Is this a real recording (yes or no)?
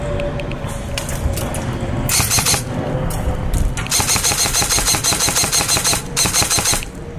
yes